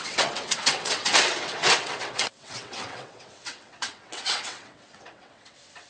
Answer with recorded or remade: remade